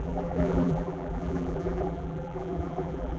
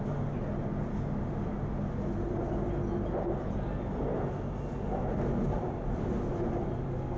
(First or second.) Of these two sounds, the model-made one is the first